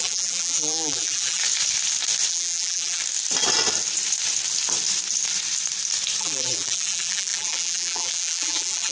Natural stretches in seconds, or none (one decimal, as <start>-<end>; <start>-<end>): 1.4-2.3; 3.0-6.2